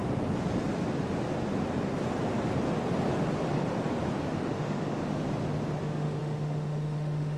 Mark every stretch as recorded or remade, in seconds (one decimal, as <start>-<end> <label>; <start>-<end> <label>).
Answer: 0.0-4.4 recorded; 4.4-5.0 remade; 5.0-5.8 recorded; 5.8-7.4 remade